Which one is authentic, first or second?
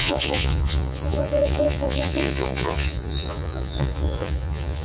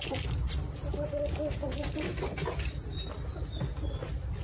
second